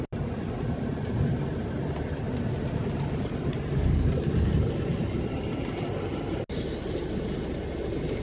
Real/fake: real